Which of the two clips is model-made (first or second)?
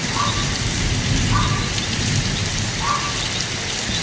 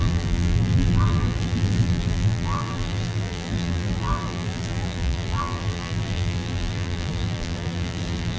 second